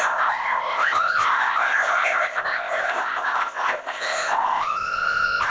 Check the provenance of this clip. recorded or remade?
remade